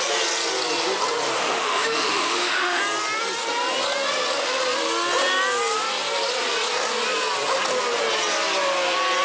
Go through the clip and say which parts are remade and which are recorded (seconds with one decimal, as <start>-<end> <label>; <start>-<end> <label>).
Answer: 0.0-1.4 recorded; 1.4-2.8 remade; 2.8-9.2 recorded